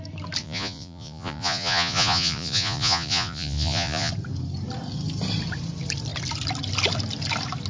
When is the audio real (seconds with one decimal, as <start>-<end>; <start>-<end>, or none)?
0.0-0.4; 4.1-7.7